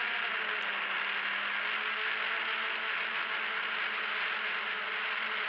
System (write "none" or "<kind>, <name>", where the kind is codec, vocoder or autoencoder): none